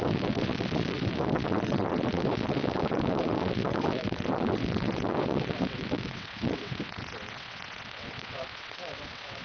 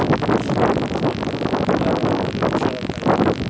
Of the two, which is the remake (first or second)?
first